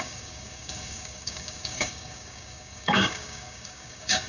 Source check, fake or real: fake